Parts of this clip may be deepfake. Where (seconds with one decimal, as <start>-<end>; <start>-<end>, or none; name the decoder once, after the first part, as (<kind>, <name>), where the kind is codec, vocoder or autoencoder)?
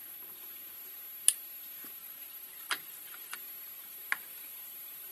2.0-3.3 (vocoder, BigVGAN v2)